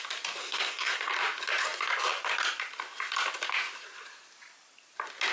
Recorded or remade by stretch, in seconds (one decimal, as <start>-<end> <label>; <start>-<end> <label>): 0.0-0.4 recorded; 0.4-1.1 remade; 1.1-5.3 recorded